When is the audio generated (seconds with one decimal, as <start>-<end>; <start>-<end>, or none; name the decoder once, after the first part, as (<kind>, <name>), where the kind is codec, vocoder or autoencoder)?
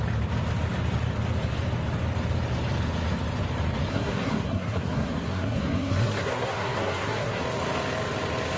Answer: 3.9-7.4 (codec, SNAC)